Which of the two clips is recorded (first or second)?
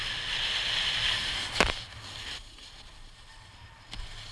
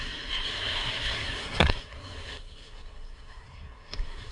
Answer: first